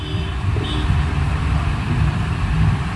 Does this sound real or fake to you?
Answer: fake